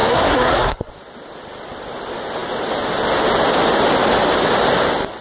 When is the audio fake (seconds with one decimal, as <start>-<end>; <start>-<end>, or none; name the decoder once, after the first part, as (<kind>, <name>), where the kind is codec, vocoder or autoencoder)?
0.0-0.9 (codec, SNAC)